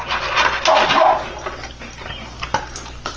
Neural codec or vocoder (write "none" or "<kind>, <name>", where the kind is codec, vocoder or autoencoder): none